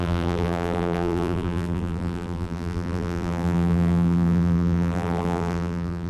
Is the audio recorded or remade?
remade